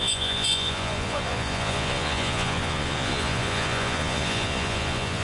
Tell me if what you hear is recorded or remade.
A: remade